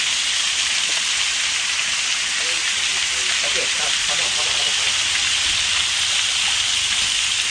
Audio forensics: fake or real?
real